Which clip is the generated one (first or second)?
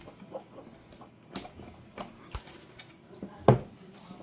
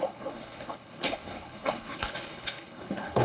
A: second